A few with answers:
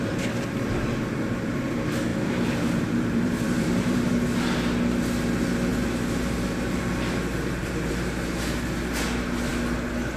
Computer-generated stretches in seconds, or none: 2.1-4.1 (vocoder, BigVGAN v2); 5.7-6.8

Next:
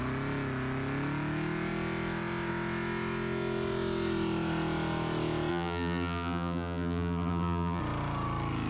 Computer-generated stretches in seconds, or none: 5.5-7.8 (vocoder, BigVGAN v2)

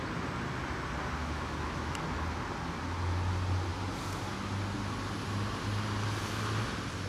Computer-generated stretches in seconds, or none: 1.2-2.0 (autoencoder, DAC-VAE)